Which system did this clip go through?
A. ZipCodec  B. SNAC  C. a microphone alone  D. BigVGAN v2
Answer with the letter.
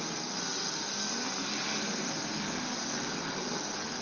C